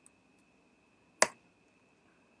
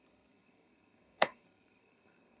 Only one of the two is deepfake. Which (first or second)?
second